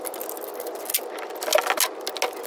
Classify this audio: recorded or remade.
recorded